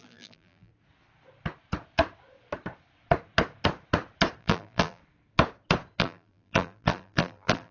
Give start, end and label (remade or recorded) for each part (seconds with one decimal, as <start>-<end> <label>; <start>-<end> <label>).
0.0-0.7 remade; 0.7-4.4 recorded; 4.4-5.0 remade; 5.0-6.0 recorded; 6.0-7.7 remade